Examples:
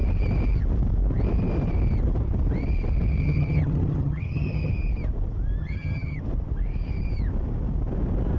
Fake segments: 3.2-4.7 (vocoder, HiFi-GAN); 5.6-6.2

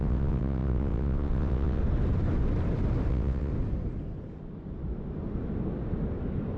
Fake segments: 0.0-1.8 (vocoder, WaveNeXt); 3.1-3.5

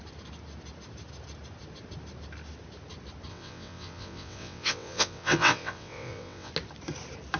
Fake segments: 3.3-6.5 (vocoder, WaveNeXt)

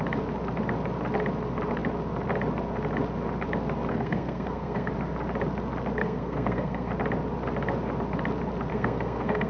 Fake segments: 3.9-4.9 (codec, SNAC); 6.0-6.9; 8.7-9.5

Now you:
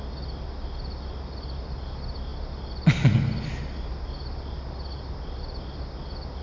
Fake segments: none

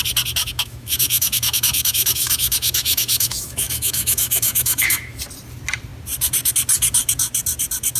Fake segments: 0.4-5.2 (autoencoder, DAC-VAE)

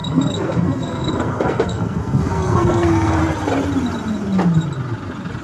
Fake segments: 0.0-3.2 (codec, SNAC)

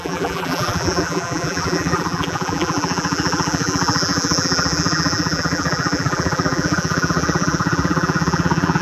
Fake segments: 0.0-8.8 (vocoder, BigVGAN v2)